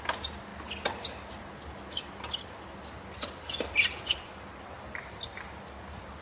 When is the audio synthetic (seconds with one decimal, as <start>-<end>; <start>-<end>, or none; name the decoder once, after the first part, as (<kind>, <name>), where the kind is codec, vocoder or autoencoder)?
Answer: none

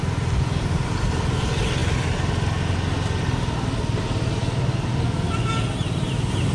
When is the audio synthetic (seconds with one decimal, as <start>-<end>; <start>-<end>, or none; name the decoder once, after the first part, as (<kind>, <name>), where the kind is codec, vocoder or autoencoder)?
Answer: none

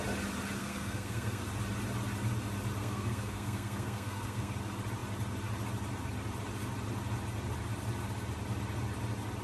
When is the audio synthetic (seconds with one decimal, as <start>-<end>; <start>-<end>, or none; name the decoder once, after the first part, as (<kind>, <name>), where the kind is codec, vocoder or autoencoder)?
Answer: 0.6-1.4 (codec, SNAC); 2.8-4.5

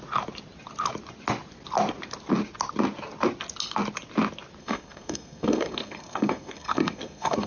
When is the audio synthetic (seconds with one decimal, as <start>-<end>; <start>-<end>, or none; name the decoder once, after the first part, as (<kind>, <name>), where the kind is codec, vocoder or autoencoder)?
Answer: 4.6-7.5 (codec, SNAC)

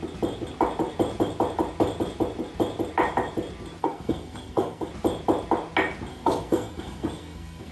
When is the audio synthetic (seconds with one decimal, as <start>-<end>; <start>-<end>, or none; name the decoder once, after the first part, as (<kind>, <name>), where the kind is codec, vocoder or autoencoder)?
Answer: 3.8-4.9 (codec, SNAC); 6.1-7.7